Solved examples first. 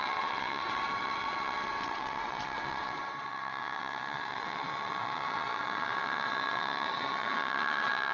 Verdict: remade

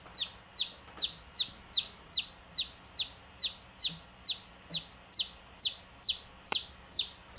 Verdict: recorded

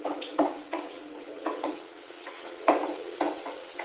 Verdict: remade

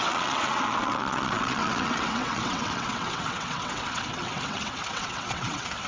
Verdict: remade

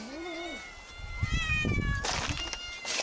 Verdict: recorded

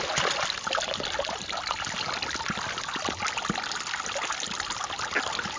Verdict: recorded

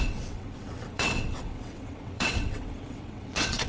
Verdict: remade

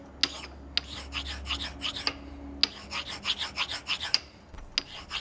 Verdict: recorded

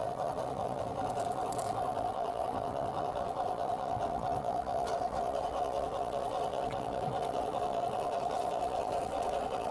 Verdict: remade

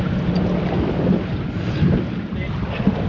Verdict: recorded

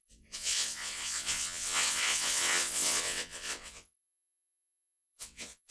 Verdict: remade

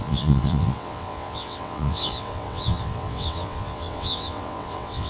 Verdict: remade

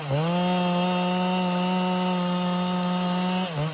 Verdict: recorded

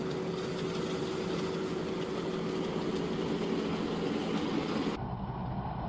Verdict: recorded